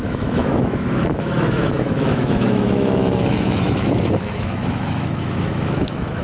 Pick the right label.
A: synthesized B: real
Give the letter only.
A